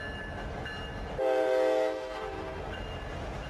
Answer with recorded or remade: recorded